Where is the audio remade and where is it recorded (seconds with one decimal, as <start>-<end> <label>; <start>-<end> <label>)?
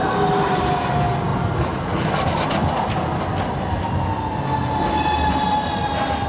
0.0-1.3 recorded; 1.3-2.1 remade; 2.1-6.3 recorded